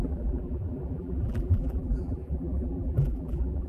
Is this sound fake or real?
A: fake